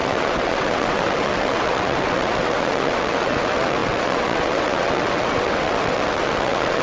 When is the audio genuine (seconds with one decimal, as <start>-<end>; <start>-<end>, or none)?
none